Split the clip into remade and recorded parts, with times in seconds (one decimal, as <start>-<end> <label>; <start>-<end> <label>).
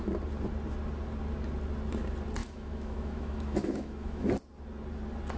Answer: 0.0-2.4 recorded; 2.4-4.3 remade; 4.3-5.4 recorded